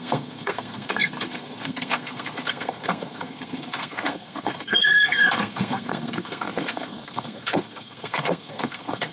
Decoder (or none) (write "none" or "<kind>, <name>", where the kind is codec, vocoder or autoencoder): codec, SNAC